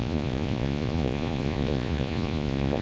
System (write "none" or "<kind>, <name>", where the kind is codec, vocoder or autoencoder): vocoder, Vocos